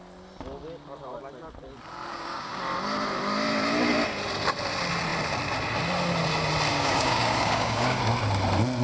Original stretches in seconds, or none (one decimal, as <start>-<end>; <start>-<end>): 0.0-2.1; 2.6-6.7; 8.0-8.8